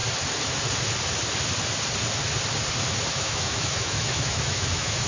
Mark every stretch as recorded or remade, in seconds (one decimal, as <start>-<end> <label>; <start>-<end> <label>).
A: 0.0-3.1 recorded; 3.1-5.1 remade